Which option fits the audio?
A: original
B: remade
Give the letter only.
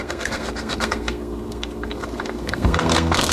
B